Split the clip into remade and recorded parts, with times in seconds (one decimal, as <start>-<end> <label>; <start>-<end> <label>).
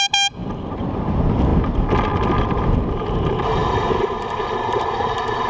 0.0-0.4 recorded; 0.4-1.0 remade; 1.0-1.5 recorded; 1.5-2.7 remade; 2.7-5.5 recorded